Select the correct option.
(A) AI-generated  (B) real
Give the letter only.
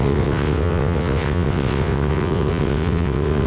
A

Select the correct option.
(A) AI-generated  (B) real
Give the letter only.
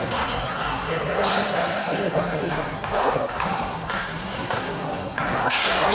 A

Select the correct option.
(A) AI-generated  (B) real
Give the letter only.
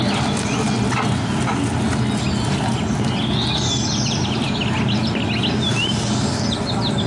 B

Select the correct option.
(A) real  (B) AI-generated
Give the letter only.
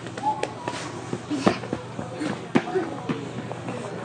A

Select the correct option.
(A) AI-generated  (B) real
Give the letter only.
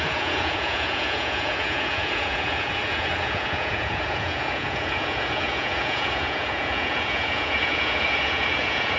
A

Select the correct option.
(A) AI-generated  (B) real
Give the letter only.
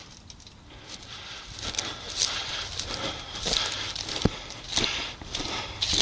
B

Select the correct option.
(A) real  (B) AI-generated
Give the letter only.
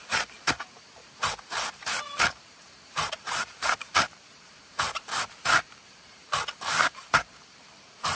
B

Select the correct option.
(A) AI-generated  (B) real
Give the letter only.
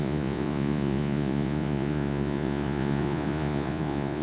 A